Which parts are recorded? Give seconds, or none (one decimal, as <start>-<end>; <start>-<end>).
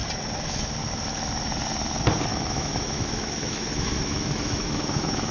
0.0-2.3